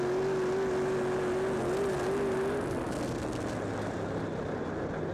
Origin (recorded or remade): recorded